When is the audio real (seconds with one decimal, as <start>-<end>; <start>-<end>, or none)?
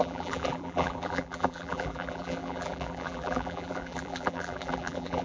none